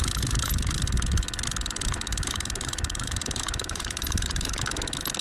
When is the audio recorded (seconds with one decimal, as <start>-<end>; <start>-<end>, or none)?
0.0-2.1; 4.5-5.2